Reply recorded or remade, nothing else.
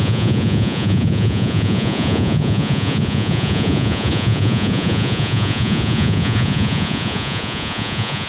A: remade